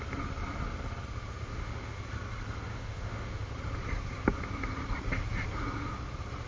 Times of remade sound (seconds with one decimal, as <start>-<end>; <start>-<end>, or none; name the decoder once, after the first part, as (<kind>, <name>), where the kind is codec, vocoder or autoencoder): 1.5-2.0 (autoencoder, DAC-VAE); 2.7-3.5